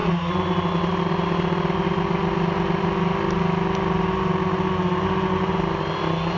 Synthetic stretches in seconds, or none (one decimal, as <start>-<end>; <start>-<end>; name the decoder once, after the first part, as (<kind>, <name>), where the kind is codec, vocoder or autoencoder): none